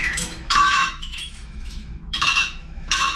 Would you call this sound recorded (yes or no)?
no